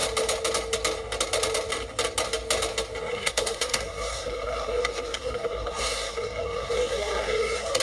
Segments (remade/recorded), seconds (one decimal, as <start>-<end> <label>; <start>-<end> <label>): 0.0-3.1 recorded; 3.1-7.8 remade